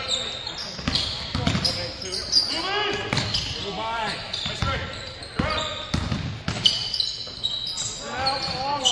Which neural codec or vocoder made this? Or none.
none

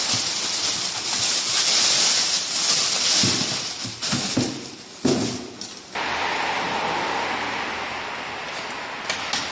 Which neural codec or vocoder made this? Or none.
none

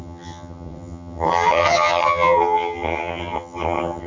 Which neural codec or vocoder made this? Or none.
vocoder, HiFi-GAN